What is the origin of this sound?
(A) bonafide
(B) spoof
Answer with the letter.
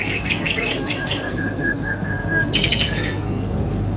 B